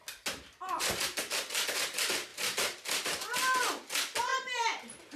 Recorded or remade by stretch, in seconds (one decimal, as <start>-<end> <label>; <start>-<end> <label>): 0.0-2.3 recorded; 2.3-3.9 remade; 3.9-4.3 recorded; 4.3-5.2 remade